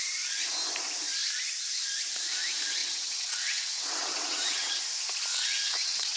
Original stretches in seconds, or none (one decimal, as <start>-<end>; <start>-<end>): 0.0-2.8; 4.8-5.3

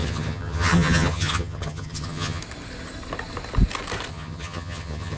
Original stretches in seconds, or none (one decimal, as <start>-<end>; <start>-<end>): 2.4-4.1

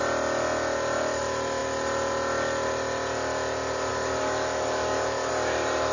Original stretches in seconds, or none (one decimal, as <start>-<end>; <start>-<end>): 0.0-3.9; 5.3-5.9

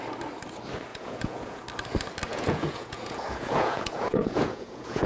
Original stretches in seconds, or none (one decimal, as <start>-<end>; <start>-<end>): 0.0-0.9; 1.6-2.3

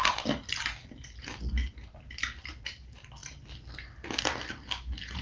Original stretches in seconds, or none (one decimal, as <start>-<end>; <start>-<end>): 0.0-1.6; 2.5-5.2

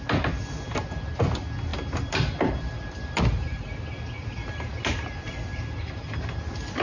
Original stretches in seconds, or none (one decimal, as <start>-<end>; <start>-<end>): 0.0-6.8

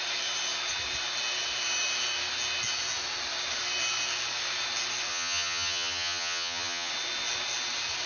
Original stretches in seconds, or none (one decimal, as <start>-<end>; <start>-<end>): 0.0-5.1; 6.9-8.1